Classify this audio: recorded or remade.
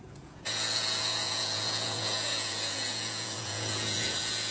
remade